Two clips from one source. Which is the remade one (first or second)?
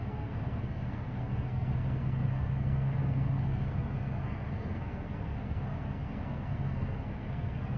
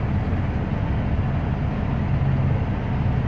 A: first